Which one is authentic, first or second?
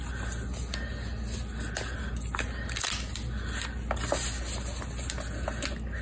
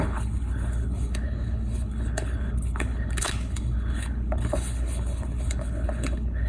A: first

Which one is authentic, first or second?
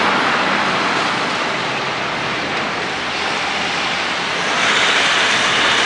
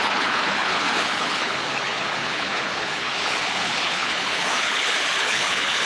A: first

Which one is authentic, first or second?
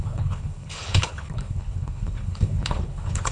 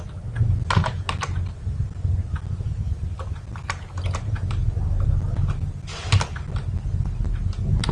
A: second